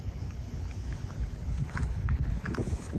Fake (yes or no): yes